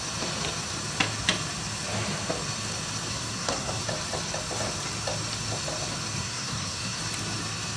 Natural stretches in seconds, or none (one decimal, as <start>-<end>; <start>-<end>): 0.0-3.1; 3.8-6.2; 7.0-7.8